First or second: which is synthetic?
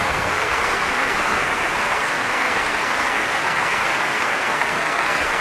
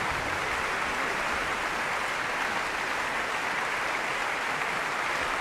first